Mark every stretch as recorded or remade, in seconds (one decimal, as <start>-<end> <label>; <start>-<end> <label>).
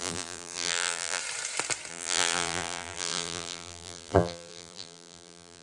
0.0-1.2 remade; 1.2-1.9 recorded; 1.9-5.6 remade